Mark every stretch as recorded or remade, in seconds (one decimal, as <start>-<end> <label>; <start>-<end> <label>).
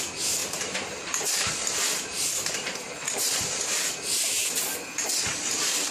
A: 0.0-0.4 recorded; 0.4-3.9 remade; 3.9-5.9 recorded